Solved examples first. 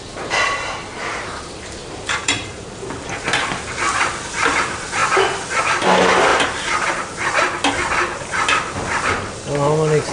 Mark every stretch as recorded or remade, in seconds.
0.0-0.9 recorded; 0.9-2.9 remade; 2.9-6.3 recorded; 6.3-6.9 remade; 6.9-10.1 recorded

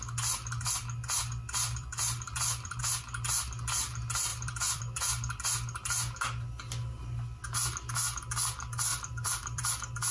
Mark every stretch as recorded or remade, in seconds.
0.0-1.7 recorded; 1.7-2.8 remade; 2.8-4.3 recorded; 4.3-4.8 remade; 4.8-8.9 recorded; 8.9-9.7 remade; 9.7-10.1 recorded

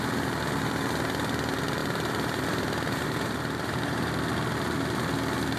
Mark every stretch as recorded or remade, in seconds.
0.0-1.8 recorded; 1.8-4.1 remade; 4.1-5.6 recorded

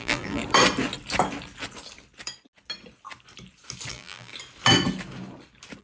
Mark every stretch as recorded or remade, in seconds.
0.0-0.4 remade; 0.4-3.9 recorded; 3.9-4.3 remade; 4.3-5.8 recorded

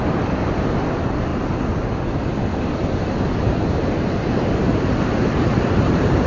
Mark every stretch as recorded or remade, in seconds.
0.0-2.5 recorded; 2.5-6.3 remade

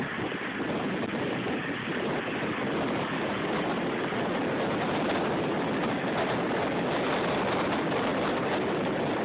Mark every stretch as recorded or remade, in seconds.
0.0-9.2 recorded